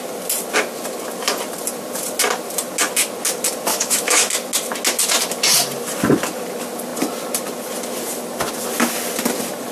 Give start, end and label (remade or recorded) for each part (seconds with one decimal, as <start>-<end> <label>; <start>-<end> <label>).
0.0-3.7 recorded; 3.7-4.3 remade; 4.3-9.7 recorded